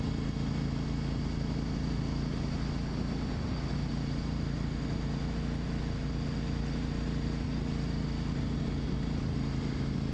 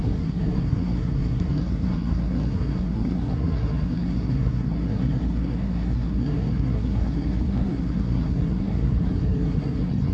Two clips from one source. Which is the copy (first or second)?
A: second